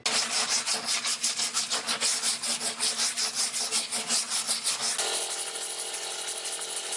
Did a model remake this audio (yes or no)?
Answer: no